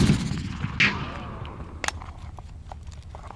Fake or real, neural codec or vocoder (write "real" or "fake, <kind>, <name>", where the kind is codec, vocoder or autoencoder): real